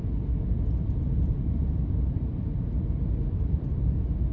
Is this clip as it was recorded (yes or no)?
no